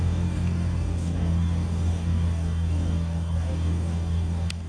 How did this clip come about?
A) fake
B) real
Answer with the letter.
A